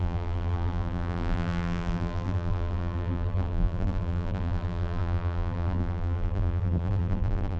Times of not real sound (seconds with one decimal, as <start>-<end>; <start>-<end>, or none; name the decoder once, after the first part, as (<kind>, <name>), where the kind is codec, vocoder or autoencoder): 0.0-7.6 (vocoder, BigVGAN v2)

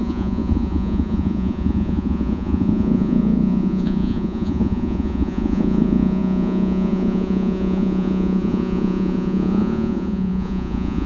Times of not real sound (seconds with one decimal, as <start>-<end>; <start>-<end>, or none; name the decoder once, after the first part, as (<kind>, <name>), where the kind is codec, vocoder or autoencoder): 0.0-11.1 (vocoder, Vocos)

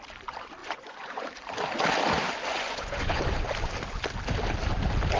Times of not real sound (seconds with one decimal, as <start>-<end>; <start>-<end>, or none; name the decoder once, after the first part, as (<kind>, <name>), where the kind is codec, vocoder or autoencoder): 0.6-1.3 (vocoder, Vocos); 2.5-3.2

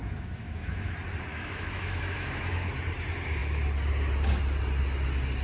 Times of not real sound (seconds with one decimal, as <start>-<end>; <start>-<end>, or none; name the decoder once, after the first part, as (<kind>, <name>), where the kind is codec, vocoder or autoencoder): 0.0-0.9 (autoencoder, DAC-VAE); 1.3-2.7

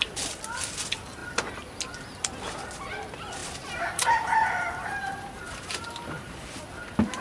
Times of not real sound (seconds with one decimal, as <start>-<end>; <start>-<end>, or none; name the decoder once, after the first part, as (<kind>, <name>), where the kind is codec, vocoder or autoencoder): 3.4-6.6 (vocoder, BigVGAN v2)

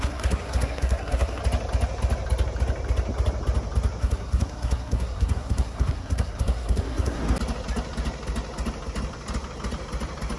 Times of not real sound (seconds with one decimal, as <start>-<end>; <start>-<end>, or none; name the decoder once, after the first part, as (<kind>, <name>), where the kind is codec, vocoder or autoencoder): 0.0-1.4 (codec, SNAC); 4.0-7.2

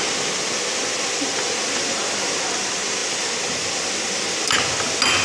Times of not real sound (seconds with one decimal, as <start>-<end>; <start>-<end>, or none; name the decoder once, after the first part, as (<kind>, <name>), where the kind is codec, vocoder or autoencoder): none

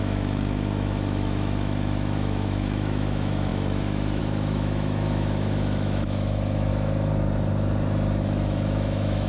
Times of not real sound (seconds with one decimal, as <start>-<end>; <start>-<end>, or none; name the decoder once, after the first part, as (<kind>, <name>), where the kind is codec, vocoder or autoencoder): 0.0-6.7 (autoencoder, DAC-VAE); 8.2-9.3